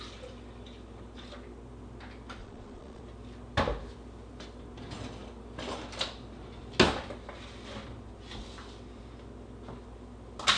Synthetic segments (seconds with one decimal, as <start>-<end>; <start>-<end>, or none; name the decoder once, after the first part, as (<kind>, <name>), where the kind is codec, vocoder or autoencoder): 2.4-3.0 (vocoder, Vocos)